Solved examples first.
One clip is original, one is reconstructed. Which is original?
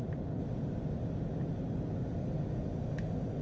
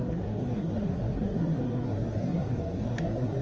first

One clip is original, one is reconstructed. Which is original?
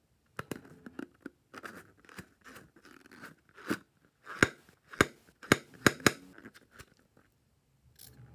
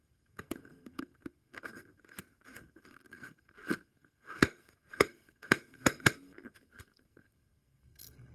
first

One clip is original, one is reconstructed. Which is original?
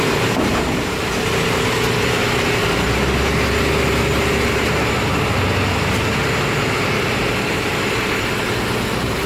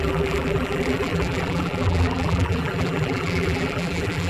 first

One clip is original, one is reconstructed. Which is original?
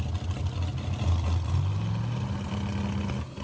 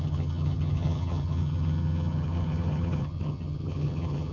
first